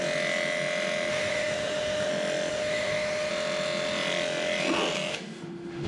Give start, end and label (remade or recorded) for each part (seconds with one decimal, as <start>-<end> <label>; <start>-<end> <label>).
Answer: 0.0-1.1 recorded; 1.1-2.1 remade; 2.1-2.5 recorded; 2.5-3.3 remade; 3.3-5.1 recorded; 5.1-5.9 remade